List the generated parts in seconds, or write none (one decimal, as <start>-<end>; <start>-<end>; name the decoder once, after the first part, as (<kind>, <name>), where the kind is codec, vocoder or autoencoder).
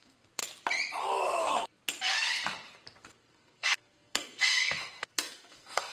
0.0-0.4 (codec, SNAC); 1.4-1.8; 3.0-5.9